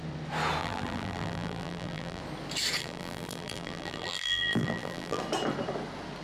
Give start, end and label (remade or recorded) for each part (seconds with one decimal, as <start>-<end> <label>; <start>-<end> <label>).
0.0-0.6 recorded; 0.6-2.2 remade; 2.2-2.8 recorded; 2.8-5.2 remade; 5.2-6.2 recorded